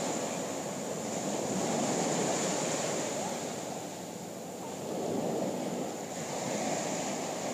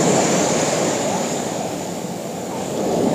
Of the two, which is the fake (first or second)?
second